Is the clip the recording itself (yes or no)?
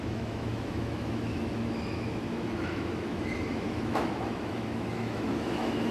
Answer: no